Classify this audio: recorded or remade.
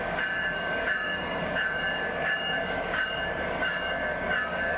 remade